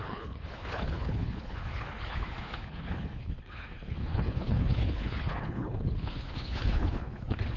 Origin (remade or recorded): remade